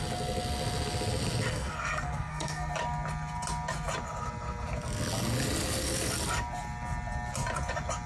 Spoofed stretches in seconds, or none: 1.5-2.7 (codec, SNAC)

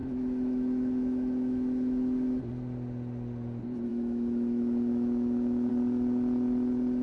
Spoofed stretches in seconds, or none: 0.0-2.4 (autoencoder, DAC-VAE); 3.9-5.7

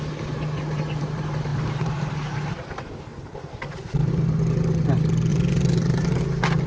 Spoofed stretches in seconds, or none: 1.5-2.1 (vocoder, BigVGAN v2); 3.1-4.1; 5.3-6.2